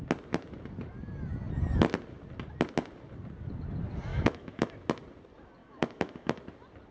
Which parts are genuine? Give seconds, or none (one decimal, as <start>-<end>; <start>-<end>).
0.0-4.1; 4.7-5.6; 6.4-6.9